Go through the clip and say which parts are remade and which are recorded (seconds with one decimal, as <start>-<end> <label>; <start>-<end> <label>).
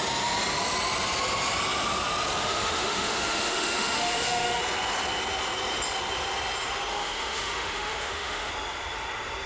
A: 0.0-2.4 recorded; 2.4-4.6 remade; 4.6-6.9 recorded; 6.9-8.5 remade; 8.5-9.5 recorded